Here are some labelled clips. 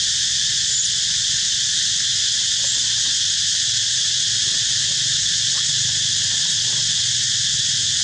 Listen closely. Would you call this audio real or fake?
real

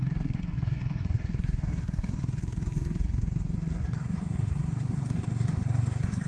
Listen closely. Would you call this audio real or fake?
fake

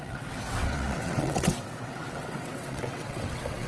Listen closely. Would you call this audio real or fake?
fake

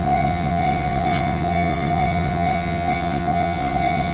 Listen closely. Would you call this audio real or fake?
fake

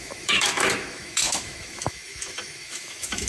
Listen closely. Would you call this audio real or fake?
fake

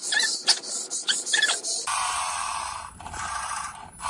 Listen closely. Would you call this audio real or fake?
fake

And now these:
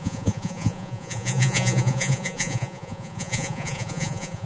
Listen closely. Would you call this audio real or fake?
fake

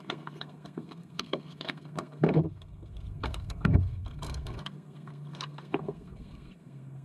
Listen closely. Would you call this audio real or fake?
fake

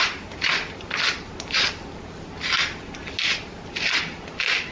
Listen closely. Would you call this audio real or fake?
real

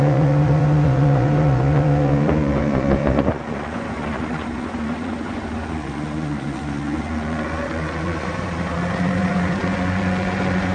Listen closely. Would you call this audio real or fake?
fake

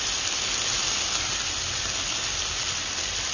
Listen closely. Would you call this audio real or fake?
real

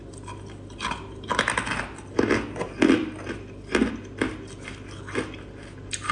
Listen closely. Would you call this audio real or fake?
real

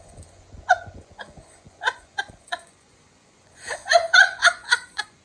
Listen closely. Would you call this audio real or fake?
fake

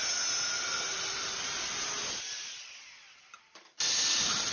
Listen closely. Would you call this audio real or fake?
real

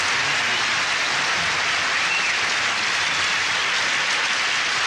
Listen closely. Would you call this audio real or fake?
real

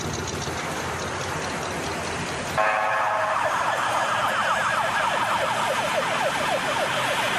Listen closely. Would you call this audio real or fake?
real